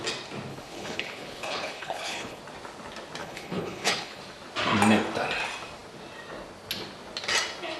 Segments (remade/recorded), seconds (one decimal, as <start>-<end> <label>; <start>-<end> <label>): 0.0-0.5 recorded; 0.5-2.4 remade; 2.4-3.2 recorded; 3.2-4.2 remade; 4.2-7.8 recorded